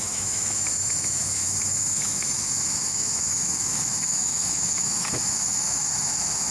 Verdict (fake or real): fake